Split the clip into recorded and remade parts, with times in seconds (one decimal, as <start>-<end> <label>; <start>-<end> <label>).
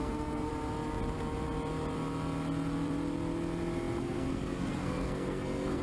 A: 0.0-0.5 remade; 0.5-4.0 recorded; 4.0-5.8 remade